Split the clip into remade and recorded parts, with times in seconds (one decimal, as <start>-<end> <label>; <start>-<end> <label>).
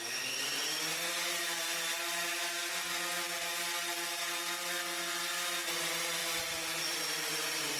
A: 0.0-7.8 recorded